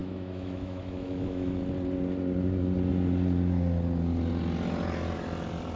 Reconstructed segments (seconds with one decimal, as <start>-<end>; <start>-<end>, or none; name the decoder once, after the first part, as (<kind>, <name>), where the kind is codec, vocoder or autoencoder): 0.0-1.6 (autoencoder, DAC-VAE)